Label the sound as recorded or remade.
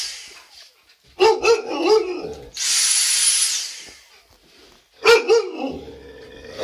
recorded